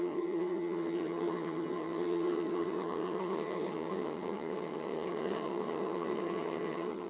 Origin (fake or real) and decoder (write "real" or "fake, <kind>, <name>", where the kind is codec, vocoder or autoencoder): fake, vocoder, HiFi-GAN